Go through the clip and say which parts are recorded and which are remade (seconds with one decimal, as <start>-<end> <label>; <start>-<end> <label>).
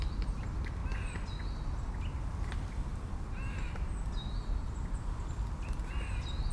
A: 0.0-2.9 recorded; 2.9-5.9 remade; 5.9-6.5 recorded